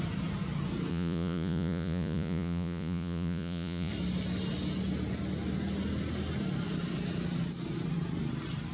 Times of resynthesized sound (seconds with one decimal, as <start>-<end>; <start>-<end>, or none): 0.9-3.9